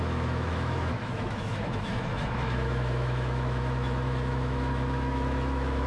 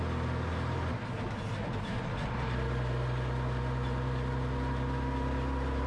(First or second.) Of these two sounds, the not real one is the first